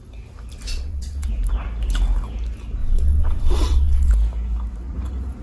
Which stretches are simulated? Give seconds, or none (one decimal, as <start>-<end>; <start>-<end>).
0.7-1.3; 2.8-4.1